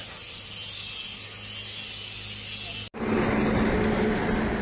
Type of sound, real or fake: real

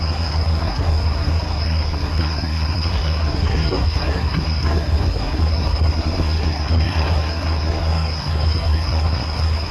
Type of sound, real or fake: fake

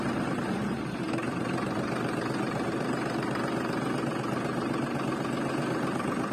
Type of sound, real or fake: fake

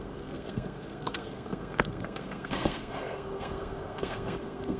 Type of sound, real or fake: fake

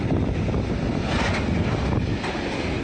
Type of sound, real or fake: real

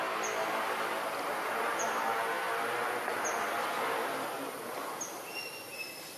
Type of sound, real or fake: real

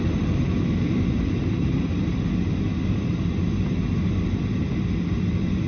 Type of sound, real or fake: real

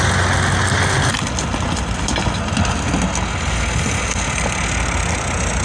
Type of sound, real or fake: real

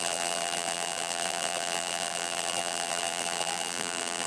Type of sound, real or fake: fake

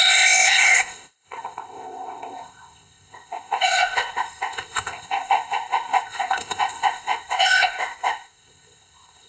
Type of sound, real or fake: fake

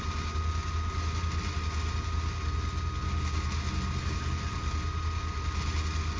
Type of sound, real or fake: real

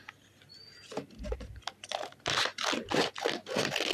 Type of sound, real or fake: real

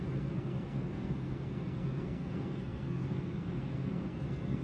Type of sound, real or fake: fake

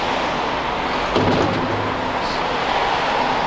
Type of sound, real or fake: real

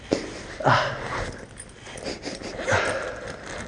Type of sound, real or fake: real